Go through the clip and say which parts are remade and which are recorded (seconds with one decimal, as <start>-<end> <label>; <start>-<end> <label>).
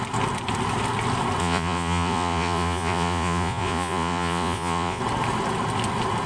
0.0-1.4 recorded; 1.4-5.0 remade; 5.0-6.3 recorded